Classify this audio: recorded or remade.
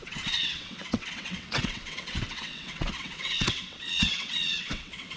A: remade